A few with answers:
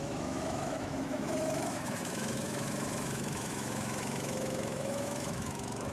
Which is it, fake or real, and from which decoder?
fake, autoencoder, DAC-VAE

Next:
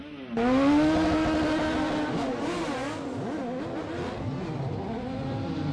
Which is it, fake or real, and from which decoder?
real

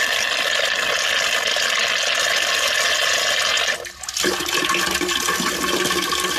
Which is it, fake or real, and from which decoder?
real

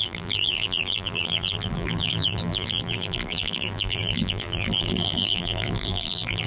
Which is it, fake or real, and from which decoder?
fake, vocoder, BigVGAN v2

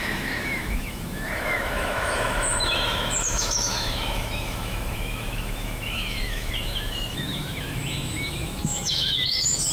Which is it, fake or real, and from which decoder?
fake, autoencoder, DAC-VAE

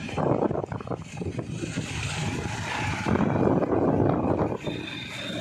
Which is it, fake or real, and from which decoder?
real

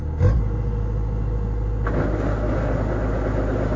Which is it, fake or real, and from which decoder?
real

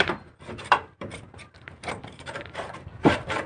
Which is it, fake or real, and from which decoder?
fake, vocoder, BigVGAN v2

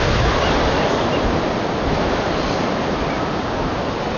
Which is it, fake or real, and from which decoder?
real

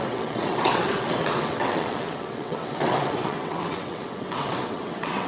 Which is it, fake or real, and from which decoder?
fake, vocoder, WaveNeXt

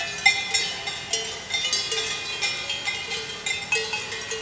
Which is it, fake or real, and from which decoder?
real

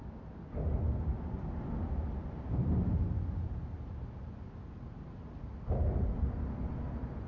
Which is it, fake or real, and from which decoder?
real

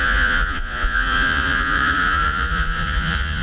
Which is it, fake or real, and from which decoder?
fake, vocoder, Vocos